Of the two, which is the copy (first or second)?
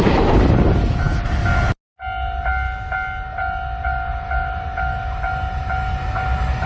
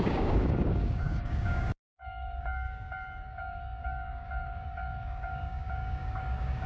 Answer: second